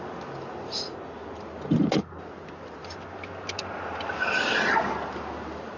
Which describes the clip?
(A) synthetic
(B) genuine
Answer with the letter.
B